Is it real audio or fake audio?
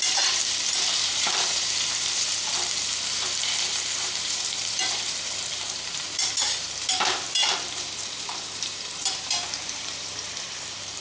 fake